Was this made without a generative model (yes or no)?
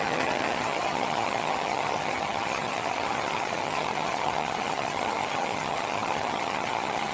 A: no